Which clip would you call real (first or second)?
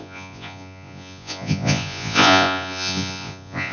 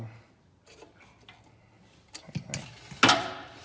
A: second